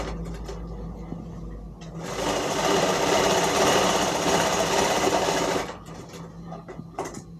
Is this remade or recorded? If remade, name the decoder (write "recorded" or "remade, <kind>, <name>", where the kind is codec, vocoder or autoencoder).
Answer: recorded